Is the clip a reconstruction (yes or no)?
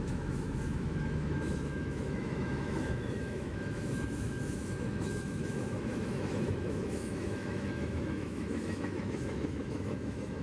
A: yes